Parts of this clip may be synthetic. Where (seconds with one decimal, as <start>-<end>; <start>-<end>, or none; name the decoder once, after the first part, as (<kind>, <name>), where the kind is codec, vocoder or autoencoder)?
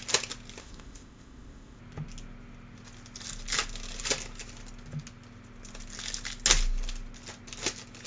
0.6-1.8 (codec, ZipCodec)